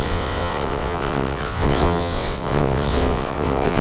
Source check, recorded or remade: remade